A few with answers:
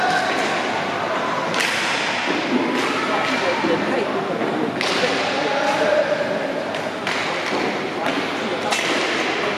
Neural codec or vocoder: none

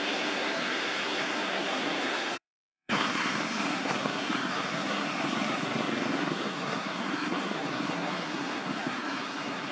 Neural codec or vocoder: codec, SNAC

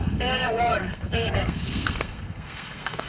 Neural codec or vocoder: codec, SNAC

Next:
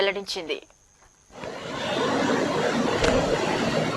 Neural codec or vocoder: none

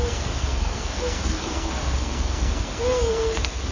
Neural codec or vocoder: codec, SNAC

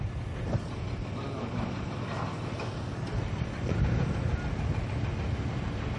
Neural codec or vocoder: none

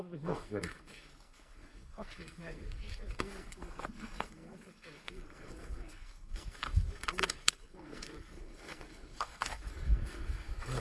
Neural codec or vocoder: codec, SNAC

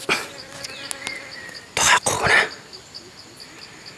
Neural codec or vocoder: none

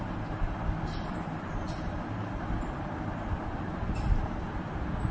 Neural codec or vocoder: none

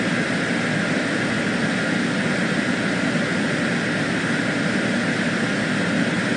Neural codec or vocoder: none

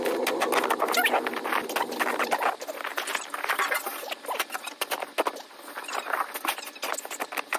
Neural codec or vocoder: none